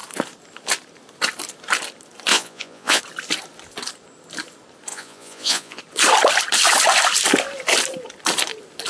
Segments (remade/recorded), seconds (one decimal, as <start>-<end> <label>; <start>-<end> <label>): 0.0-2.3 recorded; 2.3-3.0 remade; 3.0-4.9 recorded; 4.9-5.8 remade; 5.8-8.9 recorded

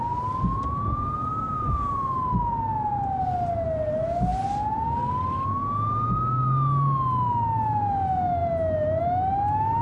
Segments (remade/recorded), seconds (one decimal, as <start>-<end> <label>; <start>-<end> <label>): 0.0-9.8 recorded

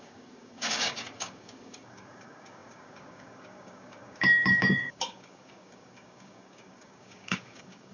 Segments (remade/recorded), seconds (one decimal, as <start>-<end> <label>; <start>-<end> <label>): 0.0-7.9 remade

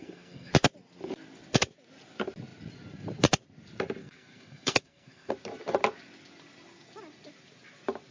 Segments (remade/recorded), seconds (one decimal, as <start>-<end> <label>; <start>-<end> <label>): 0.0-0.5 remade; 0.5-4.0 recorded; 4.0-5.3 remade; 5.3-8.1 recorded

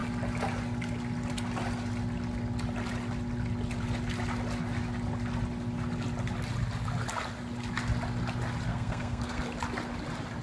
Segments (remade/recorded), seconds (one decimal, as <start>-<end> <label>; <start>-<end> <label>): 0.0-8.7 recorded; 8.7-9.4 remade; 9.4-10.4 recorded

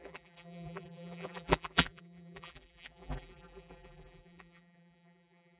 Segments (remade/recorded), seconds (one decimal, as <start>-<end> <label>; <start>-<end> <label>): 0.0-5.6 remade

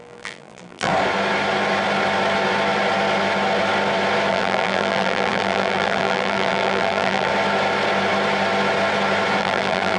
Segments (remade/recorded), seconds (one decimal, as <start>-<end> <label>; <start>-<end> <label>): 0.0-0.9 remade; 0.9-4.3 recorded; 4.3-7.3 remade; 7.3-9.4 recorded; 9.4-10.0 remade